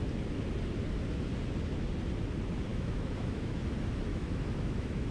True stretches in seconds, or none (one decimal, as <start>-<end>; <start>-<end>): 0.0-2.7; 3.6-4.1